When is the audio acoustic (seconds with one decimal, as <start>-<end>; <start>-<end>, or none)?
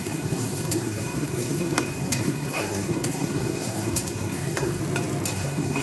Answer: 4.8-5.3